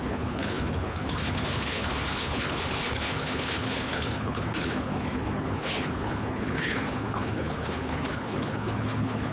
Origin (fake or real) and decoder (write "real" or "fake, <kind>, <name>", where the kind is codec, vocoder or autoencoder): fake, codec, HILCodec